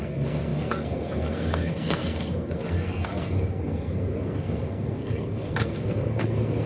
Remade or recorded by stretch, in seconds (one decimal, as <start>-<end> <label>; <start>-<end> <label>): 0.0-6.7 remade